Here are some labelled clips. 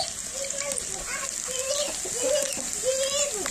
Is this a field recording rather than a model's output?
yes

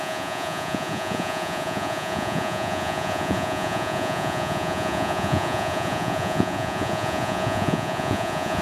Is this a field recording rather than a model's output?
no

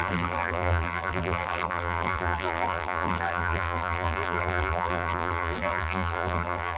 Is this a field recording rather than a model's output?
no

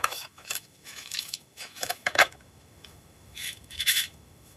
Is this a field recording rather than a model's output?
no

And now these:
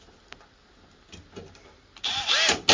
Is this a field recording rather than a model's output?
yes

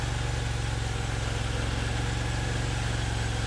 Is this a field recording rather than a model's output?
yes